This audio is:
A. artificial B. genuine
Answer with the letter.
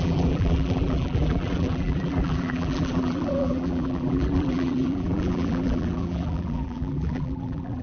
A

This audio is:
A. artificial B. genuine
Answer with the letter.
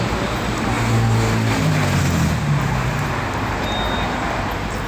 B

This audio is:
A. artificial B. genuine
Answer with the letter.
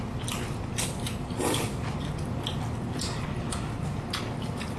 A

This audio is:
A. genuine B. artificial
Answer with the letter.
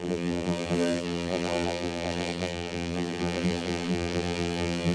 B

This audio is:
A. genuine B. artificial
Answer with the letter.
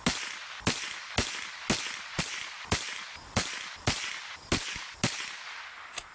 A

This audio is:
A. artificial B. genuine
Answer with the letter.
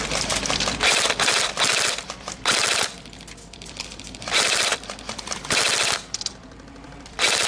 A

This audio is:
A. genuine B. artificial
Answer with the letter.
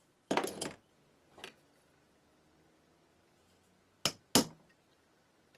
A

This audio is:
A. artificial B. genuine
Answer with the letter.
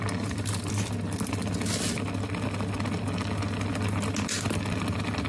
B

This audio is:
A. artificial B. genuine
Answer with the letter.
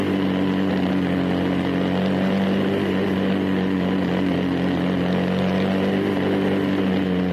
B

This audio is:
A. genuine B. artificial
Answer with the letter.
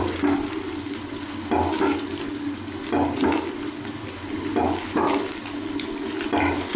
B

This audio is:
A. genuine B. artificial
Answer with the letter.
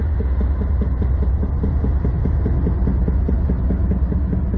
A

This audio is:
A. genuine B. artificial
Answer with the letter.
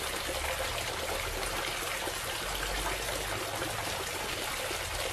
A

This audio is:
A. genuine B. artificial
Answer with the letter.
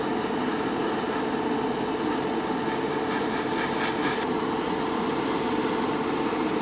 A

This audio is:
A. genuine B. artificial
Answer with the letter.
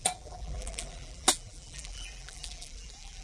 B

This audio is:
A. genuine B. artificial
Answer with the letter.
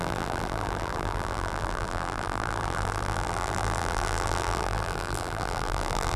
B